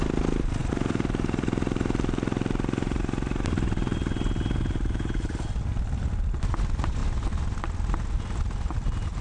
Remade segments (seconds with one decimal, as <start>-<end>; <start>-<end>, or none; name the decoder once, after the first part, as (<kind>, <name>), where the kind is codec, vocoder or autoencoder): 0.6-3.0 (vocoder, BigVGAN v2)